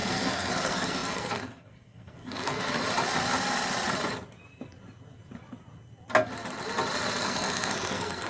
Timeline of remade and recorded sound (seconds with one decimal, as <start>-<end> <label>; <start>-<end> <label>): 0.0-2.8 remade; 2.8-7.2 recorded; 7.2-8.3 remade

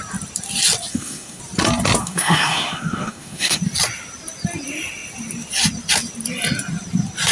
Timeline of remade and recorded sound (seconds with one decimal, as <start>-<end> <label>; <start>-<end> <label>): 0.0-0.9 recorded; 0.9-1.4 remade; 1.4-2.0 recorded; 2.0-3.6 remade; 3.6-7.3 recorded

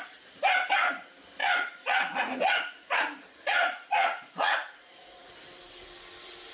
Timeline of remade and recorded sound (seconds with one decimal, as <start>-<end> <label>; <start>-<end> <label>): 0.0-1.4 recorded; 1.4-5.3 remade; 5.3-6.5 recorded

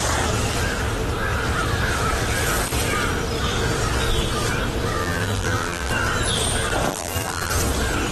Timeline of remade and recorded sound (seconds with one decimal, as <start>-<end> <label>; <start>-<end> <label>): 0.0-5.0 recorded; 5.0-5.9 remade; 5.9-6.9 recorded; 6.9-7.5 remade; 7.5-8.1 recorded